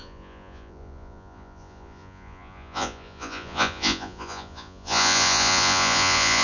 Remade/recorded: remade